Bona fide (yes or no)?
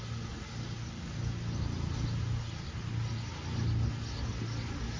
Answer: yes